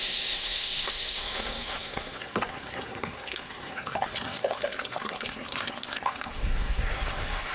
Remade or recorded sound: remade